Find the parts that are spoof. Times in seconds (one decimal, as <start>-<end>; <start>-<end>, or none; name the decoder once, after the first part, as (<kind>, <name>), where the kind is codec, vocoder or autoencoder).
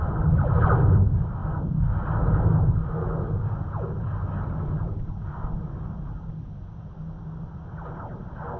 none